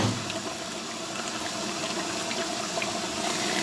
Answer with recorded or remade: recorded